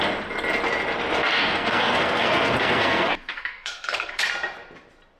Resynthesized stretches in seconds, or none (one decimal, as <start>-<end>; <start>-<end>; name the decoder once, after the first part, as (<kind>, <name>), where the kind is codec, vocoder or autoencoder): 1.2-4.3 (codec, SNAC)